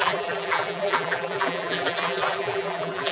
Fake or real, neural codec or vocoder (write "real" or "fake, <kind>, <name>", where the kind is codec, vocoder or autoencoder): fake, vocoder, BigVGAN v2